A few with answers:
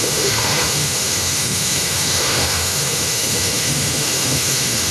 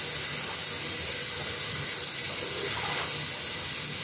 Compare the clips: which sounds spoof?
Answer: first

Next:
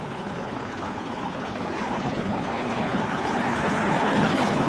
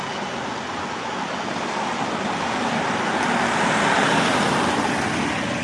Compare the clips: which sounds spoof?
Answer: first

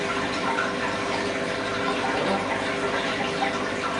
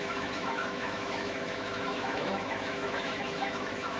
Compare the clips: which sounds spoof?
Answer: second